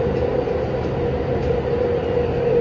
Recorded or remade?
recorded